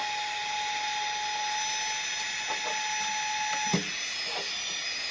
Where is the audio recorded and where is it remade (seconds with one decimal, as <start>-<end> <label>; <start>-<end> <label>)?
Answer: 0.0-5.1 recorded